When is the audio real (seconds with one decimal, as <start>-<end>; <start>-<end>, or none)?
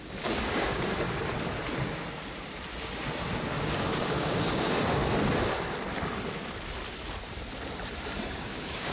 0.9-3.9; 5.0-8.3